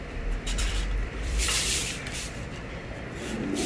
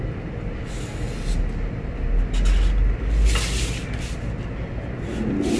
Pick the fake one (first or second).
first